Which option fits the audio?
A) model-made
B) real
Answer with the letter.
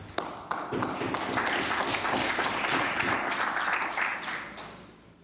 B